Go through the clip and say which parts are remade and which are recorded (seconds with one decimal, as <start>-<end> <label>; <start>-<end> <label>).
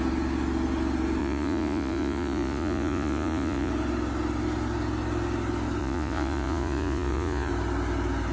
0.0-1.2 recorded; 1.2-3.7 remade; 3.7-5.8 recorded; 5.8-7.5 remade; 7.5-8.3 recorded